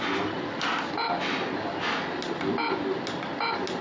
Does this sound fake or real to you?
real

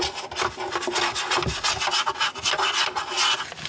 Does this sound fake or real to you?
real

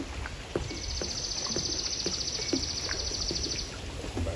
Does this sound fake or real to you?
real